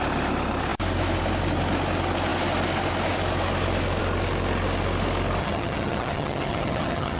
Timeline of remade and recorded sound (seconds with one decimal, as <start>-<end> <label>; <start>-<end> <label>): 0.0-5.4 recorded; 5.4-7.2 remade

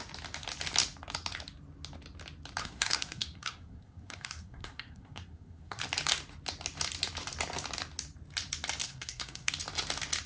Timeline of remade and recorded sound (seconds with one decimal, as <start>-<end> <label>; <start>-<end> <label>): 0.0-2.6 recorded; 2.6-5.8 remade; 5.8-8.8 recorded; 8.8-9.5 remade; 9.5-10.3 recorded

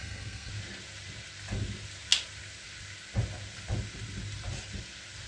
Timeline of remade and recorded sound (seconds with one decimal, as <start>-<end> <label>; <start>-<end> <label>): 0.0-0.5 remade; 0.5-5.3 recorded

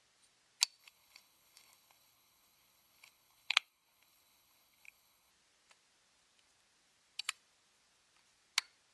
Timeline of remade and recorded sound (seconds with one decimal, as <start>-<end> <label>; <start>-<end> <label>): 0.0-0.8 recorded; 0.8-5.3 remade; 5.3-8.9 recorded